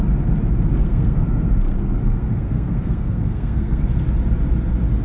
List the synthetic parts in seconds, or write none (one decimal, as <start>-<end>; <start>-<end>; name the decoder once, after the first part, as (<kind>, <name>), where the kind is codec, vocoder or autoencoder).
0.8-3.8 (codec, SNAC)

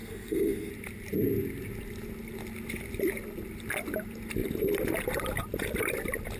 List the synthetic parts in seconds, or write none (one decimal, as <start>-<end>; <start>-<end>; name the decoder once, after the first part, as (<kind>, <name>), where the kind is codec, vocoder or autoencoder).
0.0-0.7 (codec, SNAC)

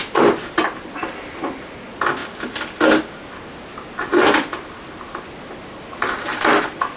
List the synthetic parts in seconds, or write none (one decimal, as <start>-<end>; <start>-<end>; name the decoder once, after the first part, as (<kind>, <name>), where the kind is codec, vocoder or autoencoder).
none

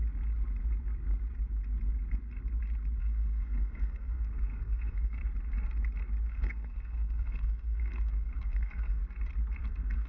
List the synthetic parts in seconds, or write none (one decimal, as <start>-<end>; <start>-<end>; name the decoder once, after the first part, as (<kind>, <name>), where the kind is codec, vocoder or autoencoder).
3.0-5.2 (codec, SNAC); 6.3-9.0; 9.6-10.1

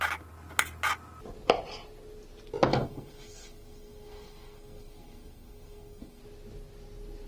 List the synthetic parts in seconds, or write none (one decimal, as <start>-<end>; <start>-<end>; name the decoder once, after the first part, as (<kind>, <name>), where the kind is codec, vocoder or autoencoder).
2.7-6.2 (codec, SNAC)